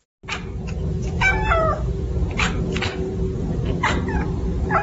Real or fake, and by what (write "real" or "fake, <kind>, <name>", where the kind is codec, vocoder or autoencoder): real